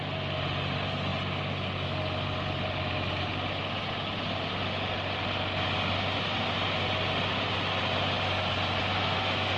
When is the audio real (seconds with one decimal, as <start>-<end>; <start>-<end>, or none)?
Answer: 0.0-9.6